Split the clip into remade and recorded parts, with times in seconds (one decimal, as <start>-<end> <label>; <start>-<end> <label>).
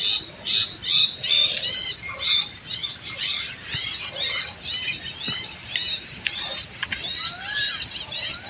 0.0-8.5 recorded